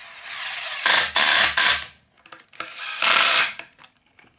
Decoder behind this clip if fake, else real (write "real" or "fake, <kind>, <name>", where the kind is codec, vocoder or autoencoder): real